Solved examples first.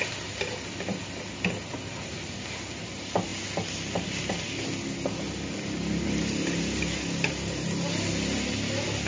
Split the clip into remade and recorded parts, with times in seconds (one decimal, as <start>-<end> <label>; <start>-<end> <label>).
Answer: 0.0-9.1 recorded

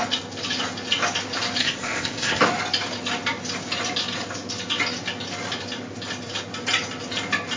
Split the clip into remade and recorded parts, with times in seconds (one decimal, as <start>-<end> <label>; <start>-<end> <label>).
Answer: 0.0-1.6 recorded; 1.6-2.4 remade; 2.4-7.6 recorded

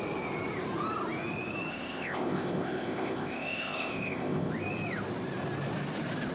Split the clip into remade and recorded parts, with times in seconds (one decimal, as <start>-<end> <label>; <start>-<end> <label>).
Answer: 0.0-1.7 recorded; 1.7-4.5 remade; 4.5-6.3 recorded

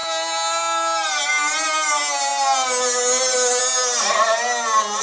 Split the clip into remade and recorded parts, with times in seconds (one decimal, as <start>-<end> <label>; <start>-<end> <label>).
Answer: 0.0-5.0 recorded